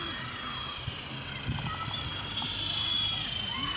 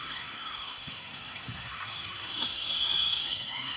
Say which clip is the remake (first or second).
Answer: second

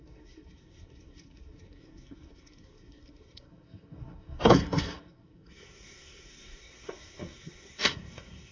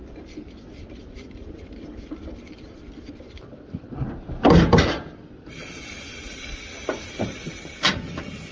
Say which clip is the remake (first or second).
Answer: first